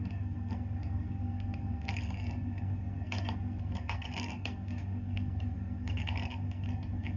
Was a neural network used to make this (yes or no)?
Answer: yes